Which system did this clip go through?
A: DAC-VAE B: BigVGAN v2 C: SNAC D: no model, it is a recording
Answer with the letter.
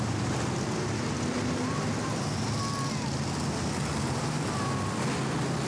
D